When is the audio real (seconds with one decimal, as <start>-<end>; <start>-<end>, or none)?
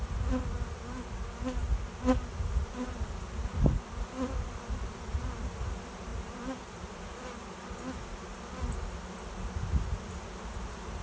0.0-6.1; 7.0-11.0